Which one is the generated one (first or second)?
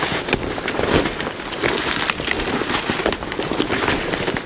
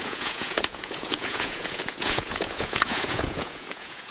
second